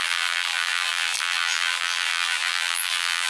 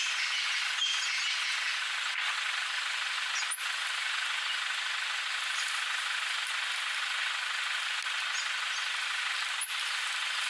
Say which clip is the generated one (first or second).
first